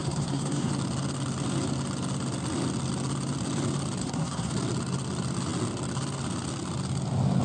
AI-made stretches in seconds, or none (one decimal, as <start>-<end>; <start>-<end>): 0.0-0.7; 4.0-4.5